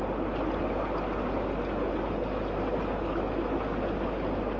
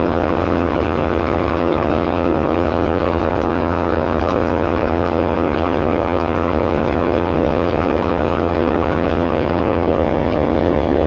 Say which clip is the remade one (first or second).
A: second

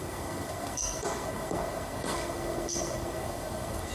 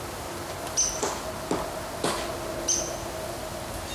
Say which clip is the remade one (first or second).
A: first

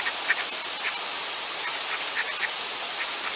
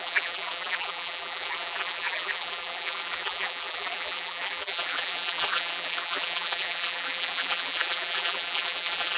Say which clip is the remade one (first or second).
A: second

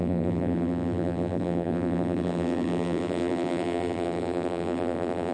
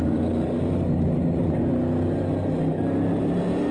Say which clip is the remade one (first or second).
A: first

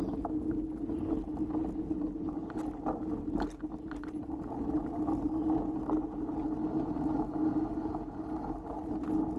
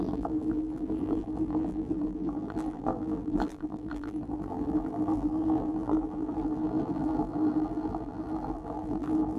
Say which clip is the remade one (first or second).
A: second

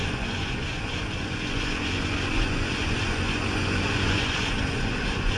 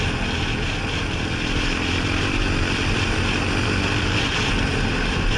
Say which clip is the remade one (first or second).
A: first